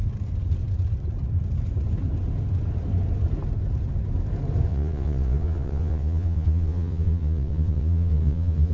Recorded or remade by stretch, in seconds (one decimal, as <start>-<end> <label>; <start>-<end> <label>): 0.0-4.7 recorded; 4.7-8.7 remade